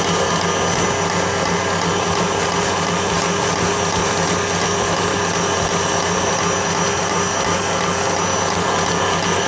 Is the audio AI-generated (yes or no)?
no